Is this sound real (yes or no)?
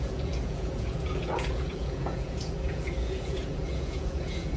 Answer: no